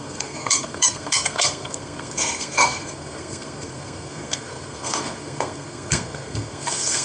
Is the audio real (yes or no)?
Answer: no